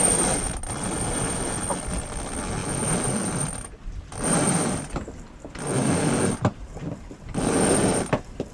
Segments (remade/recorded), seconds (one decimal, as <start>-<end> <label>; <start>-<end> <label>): 0.0-8.5 recorded